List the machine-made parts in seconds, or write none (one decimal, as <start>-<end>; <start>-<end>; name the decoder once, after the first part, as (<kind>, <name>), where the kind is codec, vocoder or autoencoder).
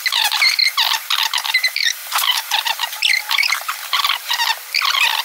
0.0-0.6 (vocoder, BigVGAN v2); 1.5-4.4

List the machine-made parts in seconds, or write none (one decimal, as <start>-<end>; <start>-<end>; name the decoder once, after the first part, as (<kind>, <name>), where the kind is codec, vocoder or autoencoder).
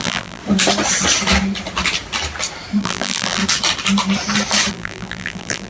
0.0-0.4 (vocoder, BigVGAN v2); 2.8-3.4; 4.7-5.7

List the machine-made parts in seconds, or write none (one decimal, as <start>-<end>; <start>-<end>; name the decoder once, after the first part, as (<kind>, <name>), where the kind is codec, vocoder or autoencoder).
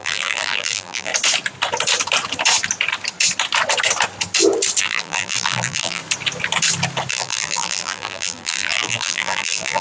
0.0-1.1 (vocoder, BigVGAN v2); 4.8-6.0; 7.1-9.8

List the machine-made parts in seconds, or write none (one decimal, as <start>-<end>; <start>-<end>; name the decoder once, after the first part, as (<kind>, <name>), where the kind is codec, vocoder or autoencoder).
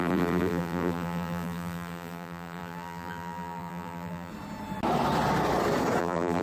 0.0-4.3 (vocoder, BigVGAN v2); 6.0-6.4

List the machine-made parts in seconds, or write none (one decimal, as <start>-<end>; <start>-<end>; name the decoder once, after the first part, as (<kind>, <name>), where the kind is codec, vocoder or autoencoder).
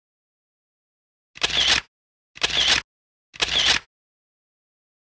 none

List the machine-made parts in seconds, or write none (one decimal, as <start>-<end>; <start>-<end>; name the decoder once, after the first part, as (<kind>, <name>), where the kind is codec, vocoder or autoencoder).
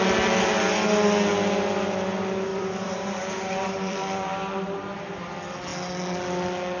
2.5-5.3 (vocoder, BigVGAN v2)